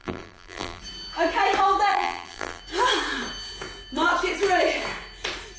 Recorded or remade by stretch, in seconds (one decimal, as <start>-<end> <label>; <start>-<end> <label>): 0.0-0.8 remade; 0.8-1.9 recorded; 1.9-2.6 remade; 2.6-5.6 recorded